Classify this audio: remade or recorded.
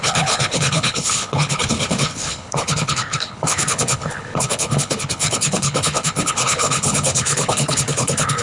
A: remade